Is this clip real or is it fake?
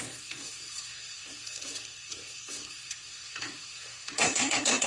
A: fake